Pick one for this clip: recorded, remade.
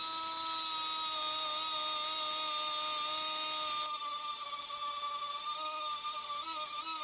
recorded